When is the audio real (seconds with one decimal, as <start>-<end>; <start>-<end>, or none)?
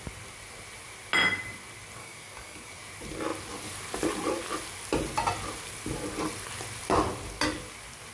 0.0-2.0; 2.8-8.1